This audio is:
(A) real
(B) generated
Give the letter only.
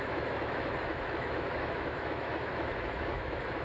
B